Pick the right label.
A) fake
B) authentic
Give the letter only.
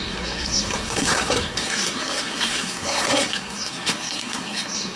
A